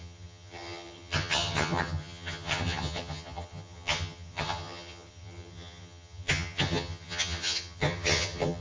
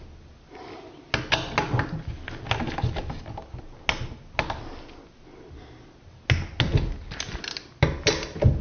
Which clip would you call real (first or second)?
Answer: second